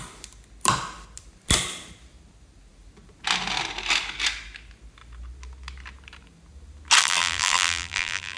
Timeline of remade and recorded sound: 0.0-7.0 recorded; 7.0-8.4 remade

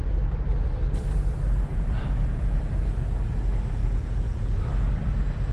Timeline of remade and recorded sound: 0.0-1.7 recorded; 1.7-2.6 remade; 2.6-3.8 recorded; 3.8-4.6 remade; 4.6-5.5 recorded

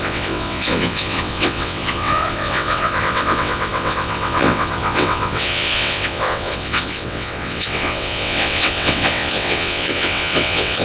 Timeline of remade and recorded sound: 0.0-10.8 remade

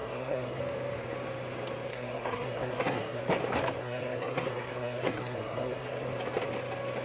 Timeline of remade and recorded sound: 0.0-0.6 remade; 0.6-1.9 recorded; 1.9-3.2 remade; 3.2-3.8 recorded; 3.8-6.1 remade; 6.1-7.0 recorded